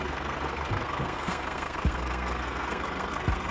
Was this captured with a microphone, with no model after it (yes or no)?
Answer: no